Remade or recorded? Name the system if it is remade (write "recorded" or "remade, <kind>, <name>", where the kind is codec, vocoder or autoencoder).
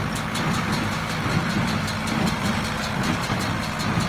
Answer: recorded